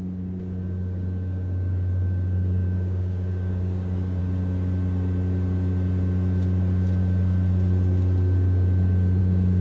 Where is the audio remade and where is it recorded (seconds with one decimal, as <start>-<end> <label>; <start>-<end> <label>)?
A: 0.0-4.2 remade; 4.2-9.2 recorded; 9.2-9.6 remade